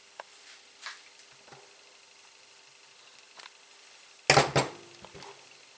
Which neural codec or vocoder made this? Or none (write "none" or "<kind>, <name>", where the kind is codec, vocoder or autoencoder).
none